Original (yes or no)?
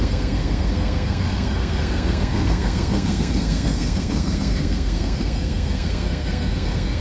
no